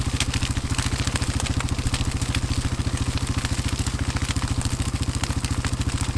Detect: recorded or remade recorded